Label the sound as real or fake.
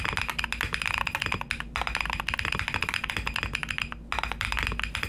real